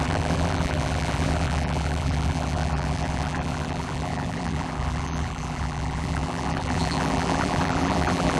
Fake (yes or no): yes